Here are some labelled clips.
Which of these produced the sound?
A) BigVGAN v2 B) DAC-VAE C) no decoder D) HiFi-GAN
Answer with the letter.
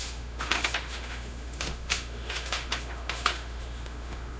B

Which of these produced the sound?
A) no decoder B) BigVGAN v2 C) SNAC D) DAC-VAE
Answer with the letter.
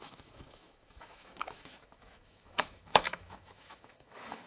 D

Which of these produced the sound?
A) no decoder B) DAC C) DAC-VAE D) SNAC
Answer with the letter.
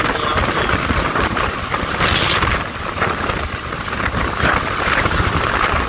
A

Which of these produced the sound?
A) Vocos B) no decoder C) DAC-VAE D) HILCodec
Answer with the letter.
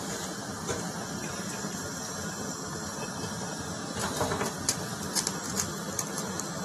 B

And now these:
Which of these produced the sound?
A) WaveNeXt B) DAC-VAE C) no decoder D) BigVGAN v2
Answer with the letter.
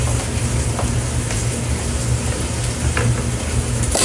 C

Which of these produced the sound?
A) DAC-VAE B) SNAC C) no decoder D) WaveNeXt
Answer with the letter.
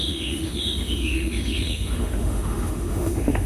A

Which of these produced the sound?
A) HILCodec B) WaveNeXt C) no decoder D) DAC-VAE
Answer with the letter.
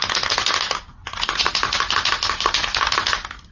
C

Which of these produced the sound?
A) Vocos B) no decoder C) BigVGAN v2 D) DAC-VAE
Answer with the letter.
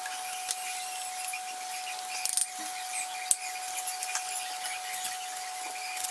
B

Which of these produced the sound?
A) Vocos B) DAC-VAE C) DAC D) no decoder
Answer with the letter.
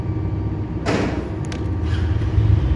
D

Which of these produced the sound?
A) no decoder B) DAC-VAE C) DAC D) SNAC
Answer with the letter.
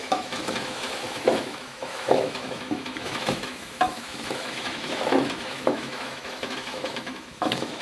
B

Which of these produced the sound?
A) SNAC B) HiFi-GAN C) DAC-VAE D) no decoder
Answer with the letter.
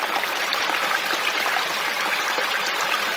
D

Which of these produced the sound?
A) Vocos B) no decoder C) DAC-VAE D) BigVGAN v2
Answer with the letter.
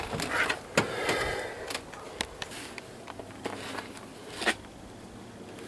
B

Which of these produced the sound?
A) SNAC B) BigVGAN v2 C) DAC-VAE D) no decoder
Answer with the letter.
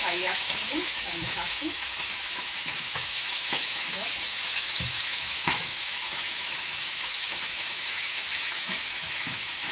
C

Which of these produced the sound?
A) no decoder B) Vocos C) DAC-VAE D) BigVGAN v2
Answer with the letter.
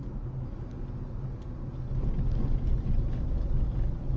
A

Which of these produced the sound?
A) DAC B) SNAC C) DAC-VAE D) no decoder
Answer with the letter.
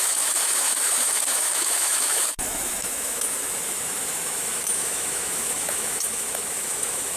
C